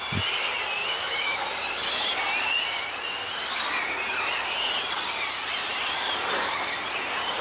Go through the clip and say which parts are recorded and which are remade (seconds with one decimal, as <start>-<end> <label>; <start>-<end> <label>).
0.0-0.8 recorded; 0.8-1.4 remade; 1.4-7.4 recorded